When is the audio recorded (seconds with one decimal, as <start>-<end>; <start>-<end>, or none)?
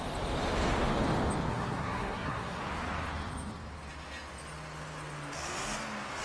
0.0-1.5; 2.6-6.2